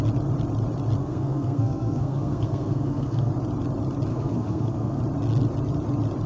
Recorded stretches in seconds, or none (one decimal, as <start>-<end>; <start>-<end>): 0.0-1.0; 3.3-4.1; 5.0-6.3